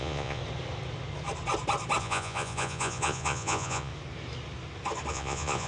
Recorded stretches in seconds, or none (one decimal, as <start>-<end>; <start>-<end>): 0.4-2.0; 3.9-5.1